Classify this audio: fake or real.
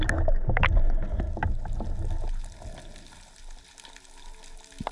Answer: real